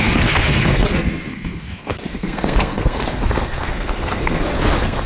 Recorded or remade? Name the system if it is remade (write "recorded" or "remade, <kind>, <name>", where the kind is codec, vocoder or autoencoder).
remade, codec, SNAC